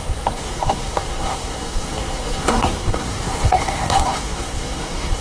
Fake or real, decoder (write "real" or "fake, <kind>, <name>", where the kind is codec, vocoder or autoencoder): fake, codec, SNAC